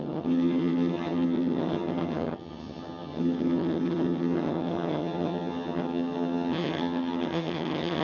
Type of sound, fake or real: fake